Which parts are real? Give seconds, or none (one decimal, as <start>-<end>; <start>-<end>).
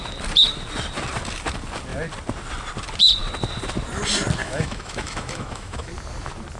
0.0-4.4; 5.9-6.6